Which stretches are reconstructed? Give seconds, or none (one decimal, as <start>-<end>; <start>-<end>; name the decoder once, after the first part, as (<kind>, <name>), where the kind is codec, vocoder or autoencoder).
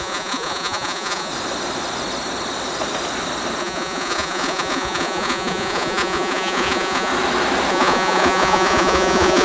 0.0-1.3 (vocoder, Vocos); 3.6-7.1; 7.7-9.4